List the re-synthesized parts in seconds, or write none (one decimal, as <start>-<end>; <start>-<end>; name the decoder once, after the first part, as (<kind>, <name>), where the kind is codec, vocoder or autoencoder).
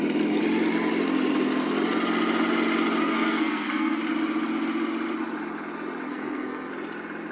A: 3.0-4.0 (codec, SNAC); 6.1-6.7